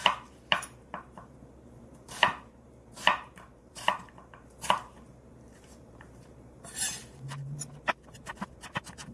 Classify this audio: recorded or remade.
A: remade